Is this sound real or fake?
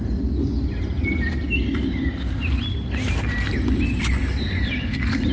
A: real